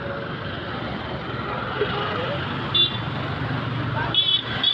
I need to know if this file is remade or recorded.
recorded